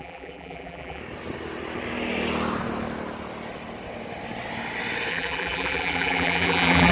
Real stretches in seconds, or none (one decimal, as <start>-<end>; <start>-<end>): 1.0-5.1